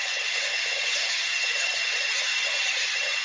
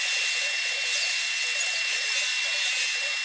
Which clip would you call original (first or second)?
second